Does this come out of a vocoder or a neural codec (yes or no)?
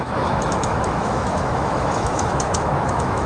yes